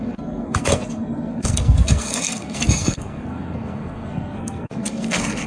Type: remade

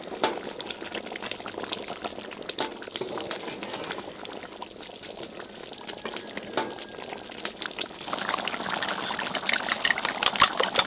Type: recorded